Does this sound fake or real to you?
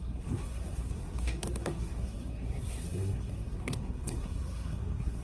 fake